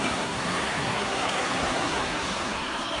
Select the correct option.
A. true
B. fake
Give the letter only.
B